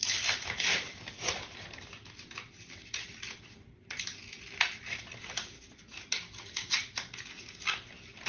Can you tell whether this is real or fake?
real